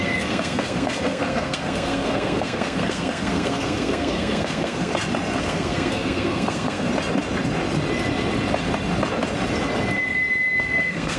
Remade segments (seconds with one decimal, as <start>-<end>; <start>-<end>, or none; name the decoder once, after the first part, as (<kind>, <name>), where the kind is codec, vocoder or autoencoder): 0.0-4.9 (codec, SNAC); 5.4-6.9; 10.6-11.2